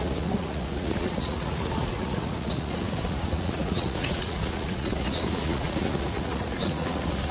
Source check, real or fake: fake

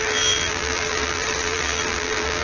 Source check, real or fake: fake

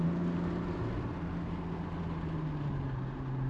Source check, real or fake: real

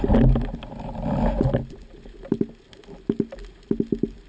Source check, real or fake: real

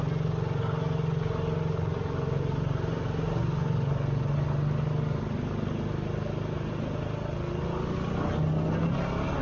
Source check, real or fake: real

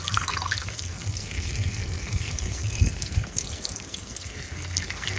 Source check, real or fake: fake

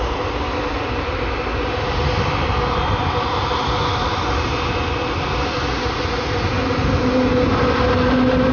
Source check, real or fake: real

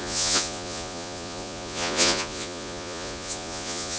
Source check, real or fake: fake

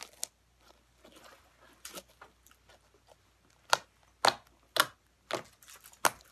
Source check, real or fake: real